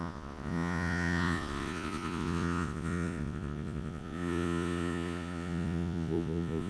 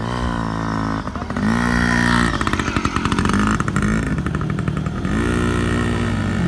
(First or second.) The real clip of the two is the second